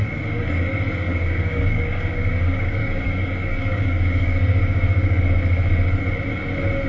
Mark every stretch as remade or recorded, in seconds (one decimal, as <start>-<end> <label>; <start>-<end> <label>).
0.0-1.1 recorded; 1.1-5.2 remade; 5.2-6.9 recorded